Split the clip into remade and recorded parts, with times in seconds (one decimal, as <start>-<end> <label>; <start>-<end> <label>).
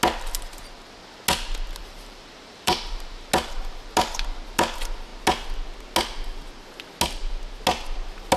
0.0-1.8 recorded; 1.8-3.3 remade; 3.3-8.4 recorded